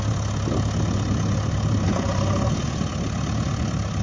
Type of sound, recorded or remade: recorded